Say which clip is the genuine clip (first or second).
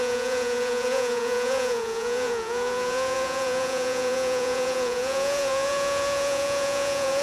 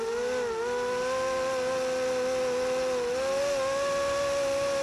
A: second